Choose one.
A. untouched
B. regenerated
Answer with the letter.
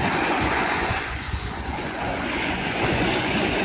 B